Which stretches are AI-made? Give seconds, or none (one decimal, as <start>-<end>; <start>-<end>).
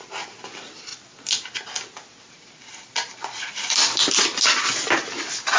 none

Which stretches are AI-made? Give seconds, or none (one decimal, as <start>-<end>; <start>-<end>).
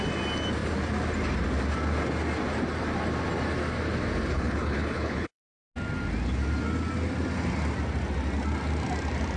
4.3-5.5